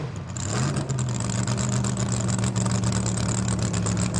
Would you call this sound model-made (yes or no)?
no